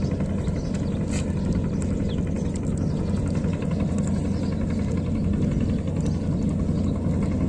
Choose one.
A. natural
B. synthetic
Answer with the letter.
A